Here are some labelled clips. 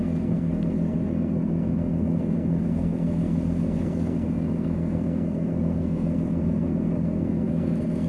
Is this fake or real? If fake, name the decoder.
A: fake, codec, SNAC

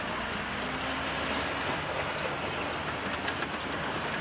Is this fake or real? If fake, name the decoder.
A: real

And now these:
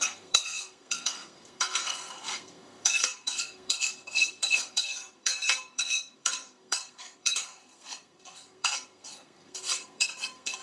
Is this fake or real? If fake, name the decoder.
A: fake, codec, SNAC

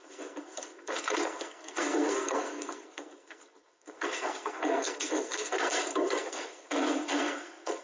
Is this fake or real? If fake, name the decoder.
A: fake, codec, SNAC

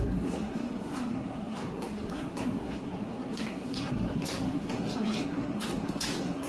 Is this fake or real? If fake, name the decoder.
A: fake, codec, SNAC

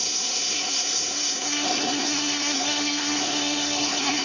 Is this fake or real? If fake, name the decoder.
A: fake, codec, SNAC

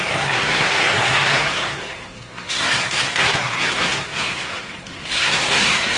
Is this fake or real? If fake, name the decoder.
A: fake, codec, SNAC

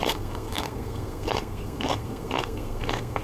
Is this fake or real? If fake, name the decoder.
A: fake, codec, SNAC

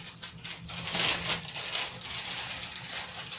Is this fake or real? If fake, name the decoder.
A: real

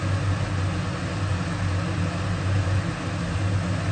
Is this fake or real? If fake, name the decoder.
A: real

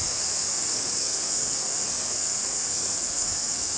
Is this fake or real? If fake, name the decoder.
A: fake, codec, SNAC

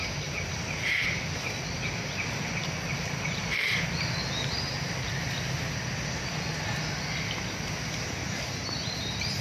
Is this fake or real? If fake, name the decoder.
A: real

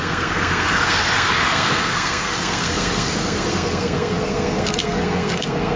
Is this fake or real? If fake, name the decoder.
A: fake, codec, SNAC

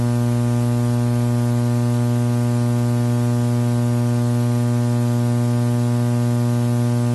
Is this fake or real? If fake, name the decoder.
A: real